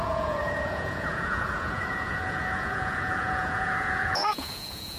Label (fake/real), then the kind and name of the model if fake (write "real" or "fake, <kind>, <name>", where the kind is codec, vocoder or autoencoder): fake, vocoder, Vocos